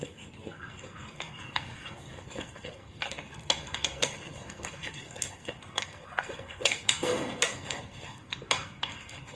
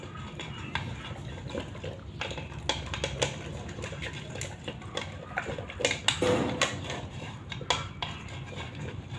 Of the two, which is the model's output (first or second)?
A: first